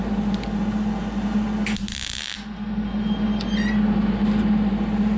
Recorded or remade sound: recorded